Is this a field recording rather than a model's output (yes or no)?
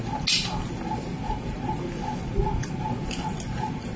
yes